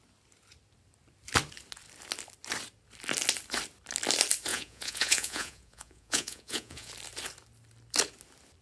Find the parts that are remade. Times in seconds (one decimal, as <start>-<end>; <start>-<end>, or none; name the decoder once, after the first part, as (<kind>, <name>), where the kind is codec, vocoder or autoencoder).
4.5-6.9 (vocoder, Vocos)